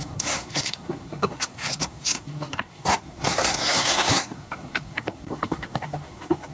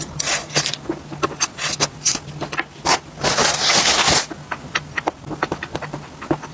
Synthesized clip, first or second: first